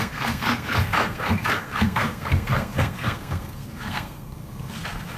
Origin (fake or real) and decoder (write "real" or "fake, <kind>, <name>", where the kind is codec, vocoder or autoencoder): fake, codec, SNAC